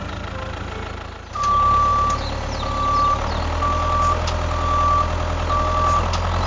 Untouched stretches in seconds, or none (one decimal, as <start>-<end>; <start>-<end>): 0.0-6.5